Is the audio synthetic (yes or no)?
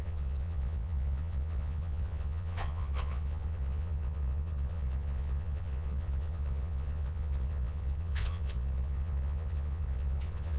yes